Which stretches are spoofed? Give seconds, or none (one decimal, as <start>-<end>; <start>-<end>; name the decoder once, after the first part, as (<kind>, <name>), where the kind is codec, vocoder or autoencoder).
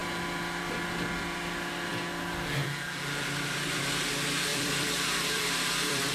4.5-6.1 (vocoder, BigVGAN v2)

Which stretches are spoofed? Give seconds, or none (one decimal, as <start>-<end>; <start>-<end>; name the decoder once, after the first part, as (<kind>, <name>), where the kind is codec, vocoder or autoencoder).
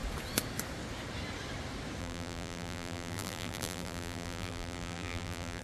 2.0-5.6 (vocoder, BigVGAN v2)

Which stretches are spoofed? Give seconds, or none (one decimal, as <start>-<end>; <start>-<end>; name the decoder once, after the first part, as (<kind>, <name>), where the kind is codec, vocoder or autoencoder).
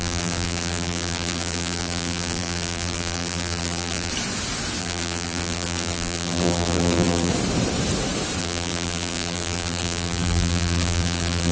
0.0-4.1 (vocoder, BigVGAN v2); 4.8-7.3; 8.4-11.5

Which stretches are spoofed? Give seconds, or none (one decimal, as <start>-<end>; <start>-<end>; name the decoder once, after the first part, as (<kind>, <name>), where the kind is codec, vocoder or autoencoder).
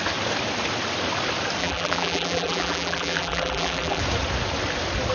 1.6-4.0 (vocoder, BigVGAN v2)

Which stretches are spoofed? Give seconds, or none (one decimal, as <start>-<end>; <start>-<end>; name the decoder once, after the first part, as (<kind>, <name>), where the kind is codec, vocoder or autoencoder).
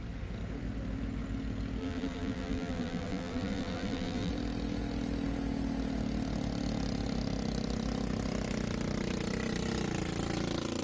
1.8-4.3 (vocoder, BigVGAN v2)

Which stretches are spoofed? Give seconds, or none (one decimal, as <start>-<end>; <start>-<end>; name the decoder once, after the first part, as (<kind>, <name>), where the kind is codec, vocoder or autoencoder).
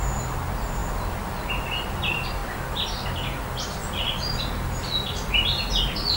none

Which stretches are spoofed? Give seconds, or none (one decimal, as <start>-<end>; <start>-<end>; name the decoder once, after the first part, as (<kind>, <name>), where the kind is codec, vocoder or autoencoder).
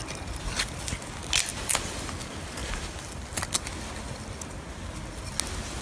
1.5-2.1 (vocoder, BigVGAN v2); 2.6-3.6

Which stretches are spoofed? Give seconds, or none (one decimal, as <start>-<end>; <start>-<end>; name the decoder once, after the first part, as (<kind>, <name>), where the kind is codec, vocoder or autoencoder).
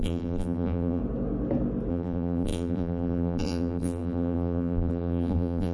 0.0-1.0 (vocoder, BigVGAN v2); 1.9-5.7